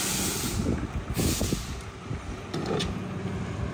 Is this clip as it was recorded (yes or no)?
yes